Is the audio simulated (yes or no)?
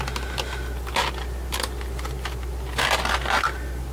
no